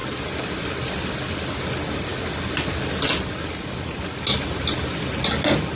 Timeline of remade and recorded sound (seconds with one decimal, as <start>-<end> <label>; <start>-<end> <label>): 0.0-1.6 remade; 1.6-5.8 recorded